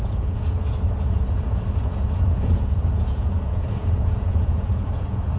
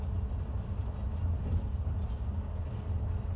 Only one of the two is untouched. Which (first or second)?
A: second